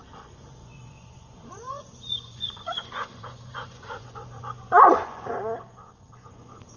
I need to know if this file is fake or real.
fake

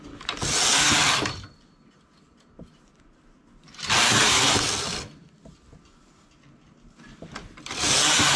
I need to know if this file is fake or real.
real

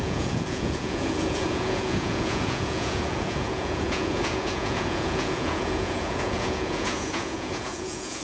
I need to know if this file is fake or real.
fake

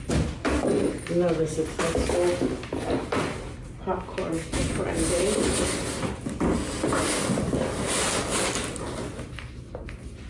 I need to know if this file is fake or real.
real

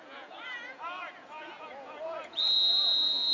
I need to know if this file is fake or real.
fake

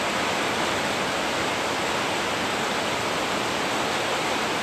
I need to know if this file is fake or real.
real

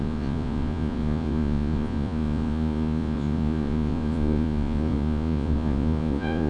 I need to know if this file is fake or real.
fake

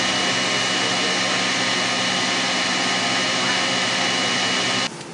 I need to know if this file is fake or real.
real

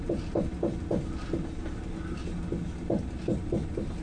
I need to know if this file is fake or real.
real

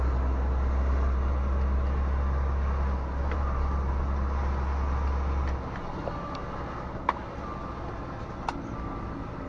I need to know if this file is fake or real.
real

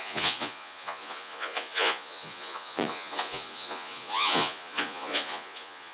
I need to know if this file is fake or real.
fake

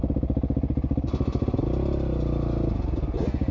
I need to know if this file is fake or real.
real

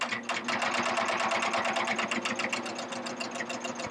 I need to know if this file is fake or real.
real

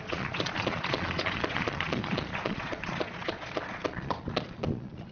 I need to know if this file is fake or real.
fake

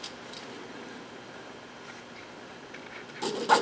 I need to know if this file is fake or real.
real